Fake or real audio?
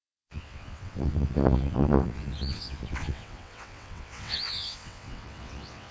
fake